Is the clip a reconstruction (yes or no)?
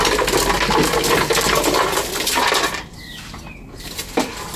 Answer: no